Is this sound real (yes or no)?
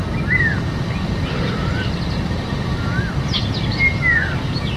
yes